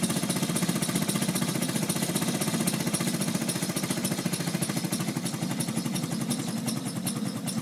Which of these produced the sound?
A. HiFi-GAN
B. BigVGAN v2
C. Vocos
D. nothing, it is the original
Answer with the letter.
D